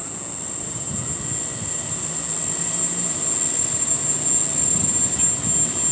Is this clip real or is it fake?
real